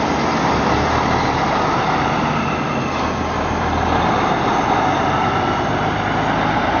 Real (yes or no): yes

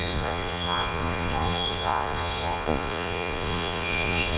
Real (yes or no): no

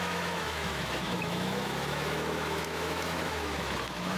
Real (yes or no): no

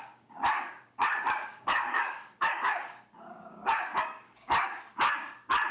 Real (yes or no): no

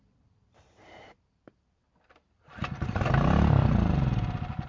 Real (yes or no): no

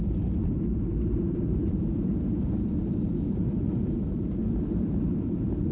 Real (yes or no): no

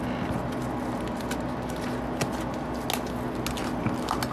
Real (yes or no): yes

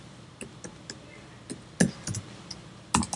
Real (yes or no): yes